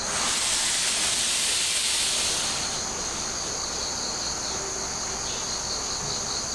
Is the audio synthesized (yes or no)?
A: no